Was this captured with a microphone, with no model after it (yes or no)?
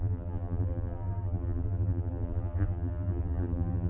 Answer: no